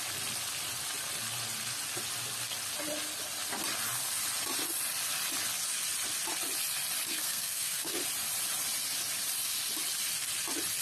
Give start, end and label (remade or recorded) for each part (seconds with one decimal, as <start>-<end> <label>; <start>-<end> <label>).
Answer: 0.0-7.1 recorded; 7.1-8.0 remade; 8.0-10.8 recorded